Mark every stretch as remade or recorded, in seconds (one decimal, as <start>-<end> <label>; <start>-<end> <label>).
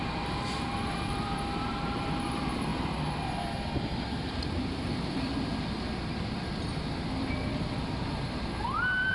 0.0-2.7 remade; 2.7-4.1 recorded; 4.1-5.3 remade; 5.3-9.1 recorded